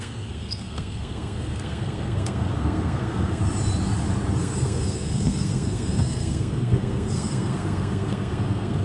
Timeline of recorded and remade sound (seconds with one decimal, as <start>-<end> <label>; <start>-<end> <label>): 0.0-3.4 remade; 3.4-4.4 recorded; 4.4-8.8 remade